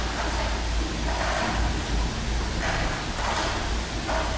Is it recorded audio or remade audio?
recorded